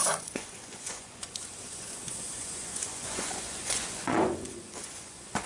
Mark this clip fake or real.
fake